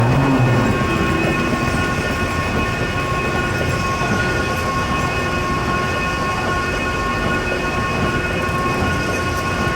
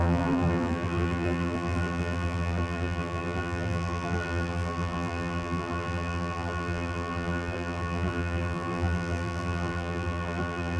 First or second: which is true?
first